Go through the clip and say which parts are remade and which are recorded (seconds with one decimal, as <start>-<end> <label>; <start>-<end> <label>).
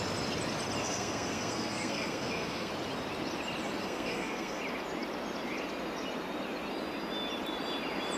0.0-0.8 recorded; 0.8-2.7 remade; 2.7-3.8 recorded; 3.8-4.6 remade; 4.6-8.2 recorded